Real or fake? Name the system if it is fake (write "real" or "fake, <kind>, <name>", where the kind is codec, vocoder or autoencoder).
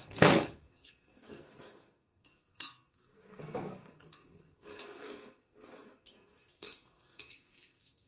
fake, codec, SNAC